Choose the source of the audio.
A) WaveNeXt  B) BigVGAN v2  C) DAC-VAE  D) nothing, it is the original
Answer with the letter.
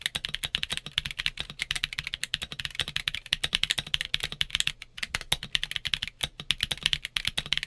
D